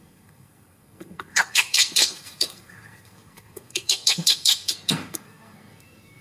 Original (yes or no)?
no